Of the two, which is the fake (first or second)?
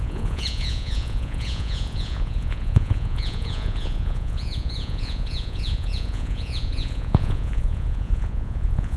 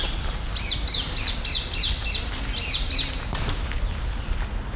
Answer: first